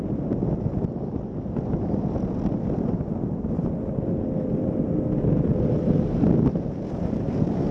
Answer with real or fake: real